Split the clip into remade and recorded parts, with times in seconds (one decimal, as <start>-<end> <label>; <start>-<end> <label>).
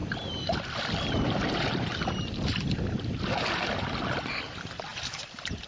0.0-3.2 remade; 3.2-5.7 recorded